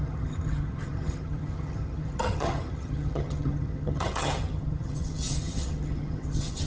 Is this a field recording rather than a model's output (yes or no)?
no